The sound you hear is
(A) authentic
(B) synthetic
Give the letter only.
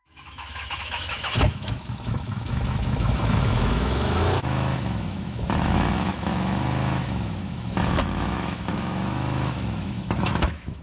B